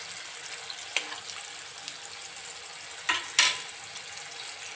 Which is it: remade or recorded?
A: recorded